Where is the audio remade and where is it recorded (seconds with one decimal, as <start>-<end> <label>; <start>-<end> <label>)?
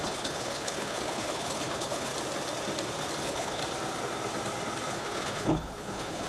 0.0-2.1 remade; 2.1-3.2 recorded; 3.2-3.6 remade; 3.6-4.9 recorded; 4.9-6.3 remade